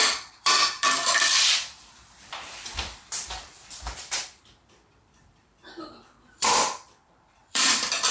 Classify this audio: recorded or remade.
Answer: remade